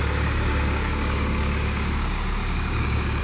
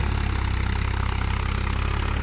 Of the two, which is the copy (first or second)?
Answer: first